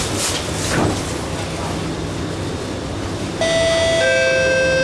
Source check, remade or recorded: recorded